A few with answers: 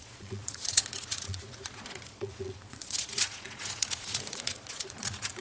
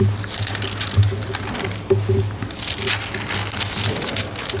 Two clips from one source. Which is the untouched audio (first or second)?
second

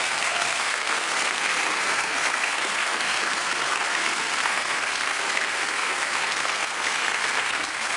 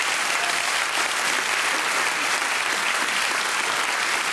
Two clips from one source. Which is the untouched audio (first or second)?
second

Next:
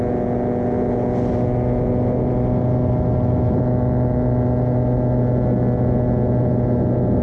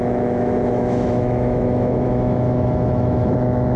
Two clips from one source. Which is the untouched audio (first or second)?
first